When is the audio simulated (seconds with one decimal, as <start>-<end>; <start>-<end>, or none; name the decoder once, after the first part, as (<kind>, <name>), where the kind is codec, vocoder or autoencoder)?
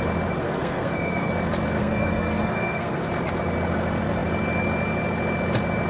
0.4-1.3 (codec, SNAC); 1.8-3.0